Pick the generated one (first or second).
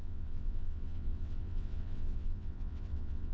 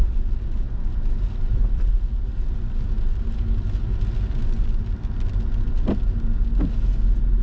first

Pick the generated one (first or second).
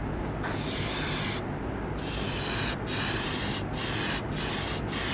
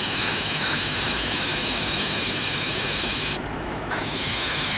second